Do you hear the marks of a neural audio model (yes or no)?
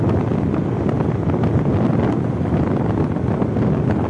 no